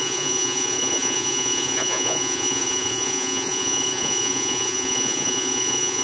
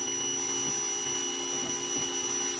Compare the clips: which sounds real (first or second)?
second